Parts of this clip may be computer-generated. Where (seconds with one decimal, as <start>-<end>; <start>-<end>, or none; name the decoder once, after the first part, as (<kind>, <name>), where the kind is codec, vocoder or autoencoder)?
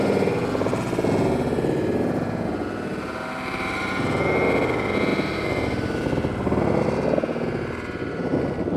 2.9-4.1 (vocoder, BigVGAN v2); 5.1-6.3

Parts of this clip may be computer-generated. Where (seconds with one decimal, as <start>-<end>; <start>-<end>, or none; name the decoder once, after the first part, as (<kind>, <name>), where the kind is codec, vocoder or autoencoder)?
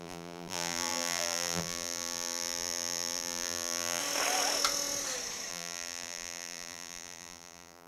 0.0-4.0 (vocoder, BigVGAN v2); 5.5-7.9